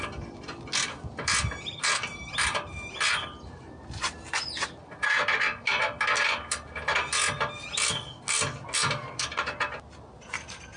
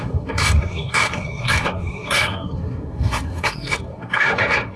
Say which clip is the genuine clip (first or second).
first